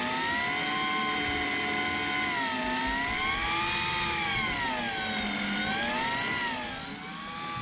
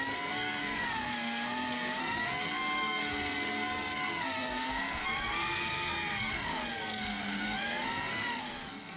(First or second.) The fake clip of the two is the second